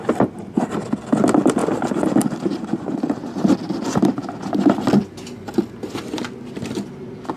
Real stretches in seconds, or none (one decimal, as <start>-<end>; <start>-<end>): 0.0-7.4